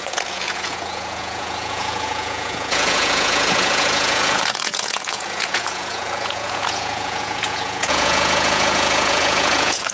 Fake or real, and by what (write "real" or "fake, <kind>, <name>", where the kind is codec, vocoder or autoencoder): fake, vocoder, Vocos